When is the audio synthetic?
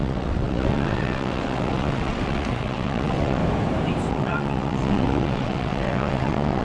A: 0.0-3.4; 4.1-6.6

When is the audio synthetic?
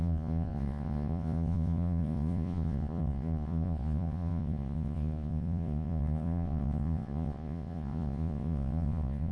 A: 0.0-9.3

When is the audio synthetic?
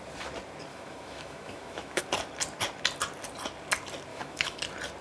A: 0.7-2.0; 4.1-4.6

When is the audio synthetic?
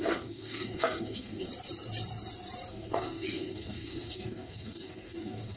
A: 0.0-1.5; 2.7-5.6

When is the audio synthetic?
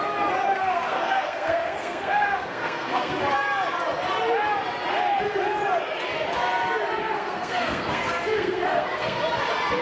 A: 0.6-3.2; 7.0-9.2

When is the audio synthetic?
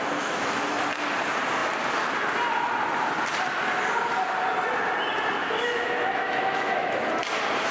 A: 0.0-0.7; 5.4-7.1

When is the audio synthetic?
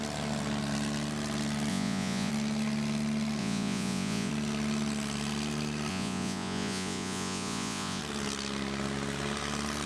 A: 1.7-2.3; 3.4-4.3; 5.9-8.0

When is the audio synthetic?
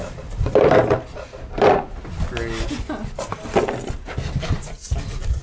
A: 0.0-2.0